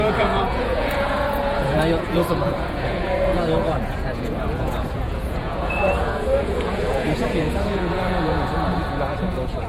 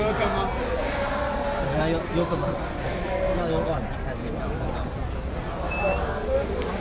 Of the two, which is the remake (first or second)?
first